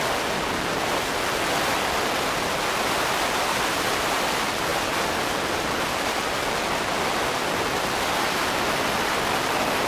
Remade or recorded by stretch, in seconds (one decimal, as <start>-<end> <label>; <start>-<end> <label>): 0.0-9.9 recorded